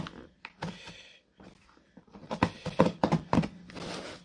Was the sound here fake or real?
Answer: real